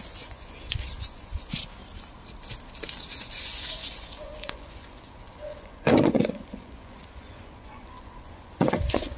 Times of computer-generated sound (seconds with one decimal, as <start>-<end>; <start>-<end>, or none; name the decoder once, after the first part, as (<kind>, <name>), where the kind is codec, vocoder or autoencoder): 0.0-1.8 (vocoder, Vocos); 3.1-9.2